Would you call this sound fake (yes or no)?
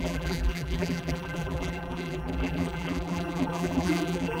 yes